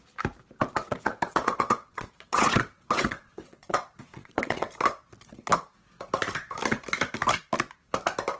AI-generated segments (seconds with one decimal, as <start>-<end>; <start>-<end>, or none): 0.8-4.7